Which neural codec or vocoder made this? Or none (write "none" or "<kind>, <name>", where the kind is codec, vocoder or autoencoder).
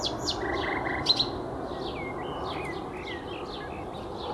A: none